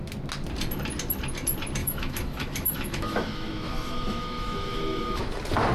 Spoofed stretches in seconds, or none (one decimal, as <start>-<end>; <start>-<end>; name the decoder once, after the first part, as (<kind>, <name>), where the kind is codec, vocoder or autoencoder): 1.8-5.2 (autoencoder, DAC-VAE)